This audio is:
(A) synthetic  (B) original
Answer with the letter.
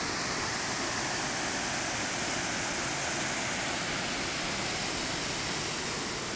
B